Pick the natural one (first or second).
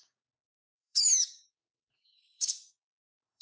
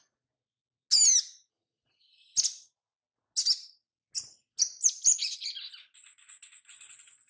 second